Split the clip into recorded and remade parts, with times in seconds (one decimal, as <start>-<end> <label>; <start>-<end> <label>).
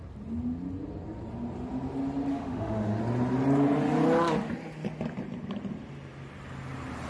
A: 0.0-2.3 recorded; 2.3-3.0 remade; 3.0-7.1 recorded